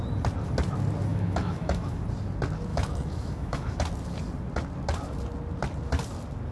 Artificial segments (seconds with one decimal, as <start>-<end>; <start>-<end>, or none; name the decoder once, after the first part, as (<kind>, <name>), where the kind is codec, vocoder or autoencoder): 1.1-2.0 (autoencoder, DAC-VAE); 2.7-3.8